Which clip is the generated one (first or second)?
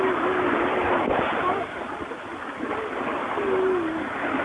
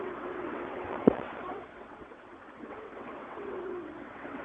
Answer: second